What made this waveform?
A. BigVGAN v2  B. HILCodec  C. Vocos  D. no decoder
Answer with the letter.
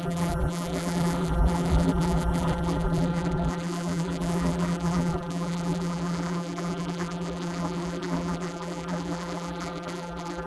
A